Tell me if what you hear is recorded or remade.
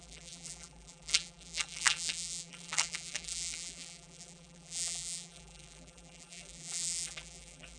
remade